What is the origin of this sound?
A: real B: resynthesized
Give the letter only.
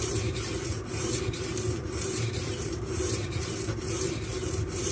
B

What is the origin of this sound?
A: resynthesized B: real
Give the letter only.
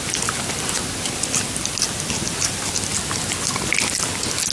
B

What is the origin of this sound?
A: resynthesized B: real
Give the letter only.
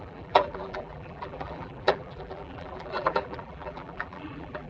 A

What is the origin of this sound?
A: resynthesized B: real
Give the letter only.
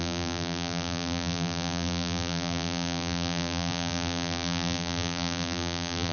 A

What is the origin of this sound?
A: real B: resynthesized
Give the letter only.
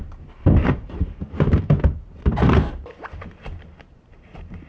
B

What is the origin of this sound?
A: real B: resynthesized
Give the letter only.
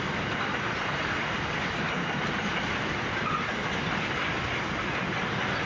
A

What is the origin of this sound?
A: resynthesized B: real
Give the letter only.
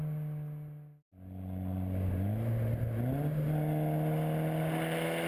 B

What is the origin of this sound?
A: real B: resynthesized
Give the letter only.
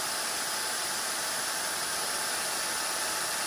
B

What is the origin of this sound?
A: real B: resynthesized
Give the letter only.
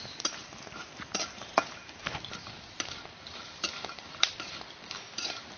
B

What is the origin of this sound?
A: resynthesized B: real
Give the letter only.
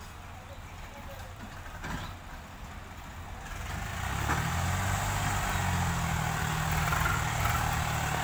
B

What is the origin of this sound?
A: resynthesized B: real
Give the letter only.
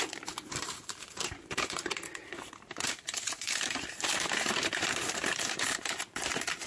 A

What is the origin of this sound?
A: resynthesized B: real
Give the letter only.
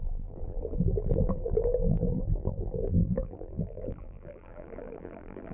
A